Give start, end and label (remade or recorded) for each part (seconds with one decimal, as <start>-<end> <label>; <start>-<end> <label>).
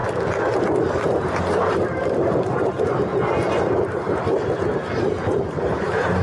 0.0-0.8 recorded; 0.8-3.1 remade; 3.1-5.0 recorded; 5.0-6.2 remade